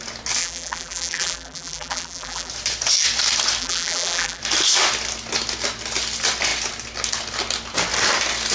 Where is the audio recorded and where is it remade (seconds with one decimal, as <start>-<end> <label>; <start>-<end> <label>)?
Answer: 0.0-0.4 recorded; 0.4-2.5 remade; 2.5-3.6 recorded; 3.6-4.4 remade; 4.4-8.5 recorded